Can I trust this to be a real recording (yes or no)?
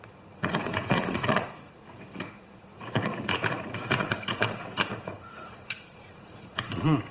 no